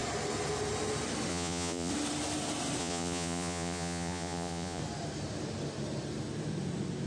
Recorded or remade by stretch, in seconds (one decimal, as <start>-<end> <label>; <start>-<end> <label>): 0.0-1.3 recorded; 1.3-1.9 remade; 1.9-2.8 recorded; 2.8-4.8 remade; 4.8-7.1 recorded